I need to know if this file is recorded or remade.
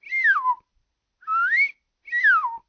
recorded